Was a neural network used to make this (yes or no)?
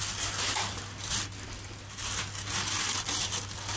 no